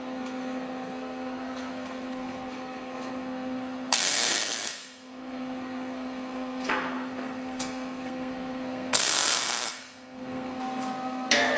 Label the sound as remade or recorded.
remade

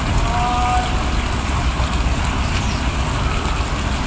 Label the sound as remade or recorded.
recorded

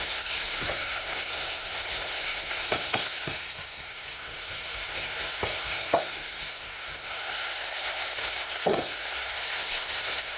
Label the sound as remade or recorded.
remade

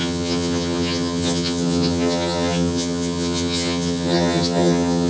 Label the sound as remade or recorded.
remade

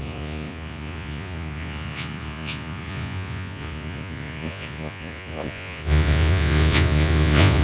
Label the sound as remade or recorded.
remade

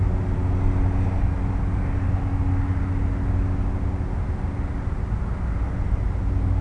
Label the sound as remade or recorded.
recorded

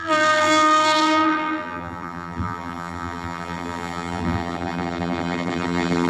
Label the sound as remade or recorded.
remade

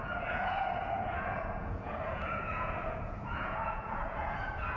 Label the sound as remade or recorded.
remade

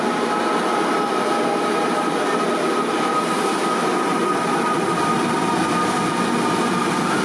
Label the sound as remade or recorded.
recorded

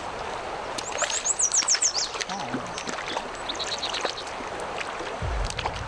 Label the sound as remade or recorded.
recorded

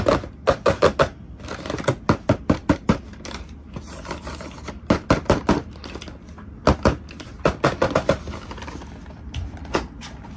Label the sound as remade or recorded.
recorded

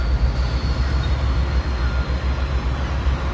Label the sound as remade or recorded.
recorded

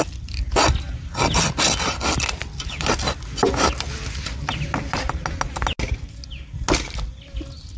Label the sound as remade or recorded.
recorded